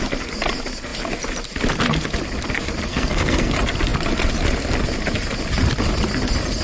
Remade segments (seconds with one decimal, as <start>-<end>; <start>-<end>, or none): 2.9-3.5